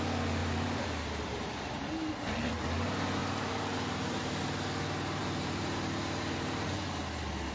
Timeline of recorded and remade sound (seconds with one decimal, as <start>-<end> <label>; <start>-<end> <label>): 0.0-0.4 recorded; 0.4-2.1 remade; 2.1-3.2 recorded; 3.2-4.4 remade; 4.4-5.2 recorded; 5.2-7.0 remade; 7.0-7.5 recorded